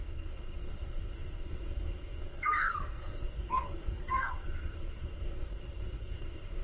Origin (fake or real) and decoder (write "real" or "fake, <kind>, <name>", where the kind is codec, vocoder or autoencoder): fake, codec, SNAC